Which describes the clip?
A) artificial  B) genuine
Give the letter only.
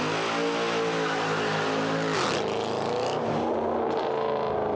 B